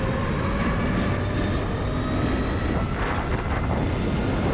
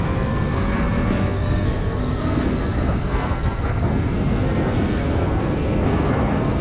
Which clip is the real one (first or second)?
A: first